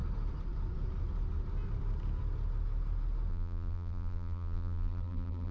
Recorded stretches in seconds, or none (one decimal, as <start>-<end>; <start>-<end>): 0.0-3.3